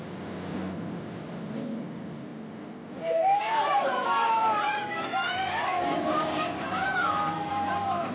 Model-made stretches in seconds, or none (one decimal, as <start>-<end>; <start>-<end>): 7.0-7.5